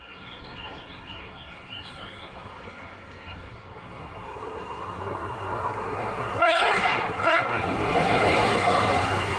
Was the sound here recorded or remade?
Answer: remade